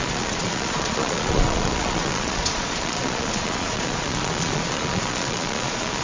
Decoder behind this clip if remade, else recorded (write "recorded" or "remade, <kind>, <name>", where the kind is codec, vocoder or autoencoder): remade, vocoder, Vocos